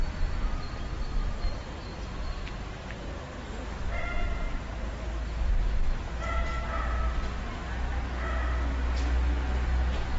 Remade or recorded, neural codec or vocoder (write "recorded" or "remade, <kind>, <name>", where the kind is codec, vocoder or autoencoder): recorded